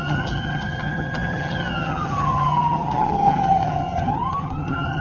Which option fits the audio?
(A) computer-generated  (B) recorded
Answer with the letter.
A